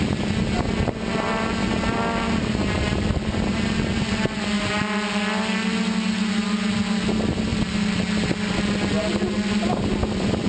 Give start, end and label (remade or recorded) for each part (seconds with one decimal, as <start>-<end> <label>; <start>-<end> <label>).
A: 0.0-10.5 recorded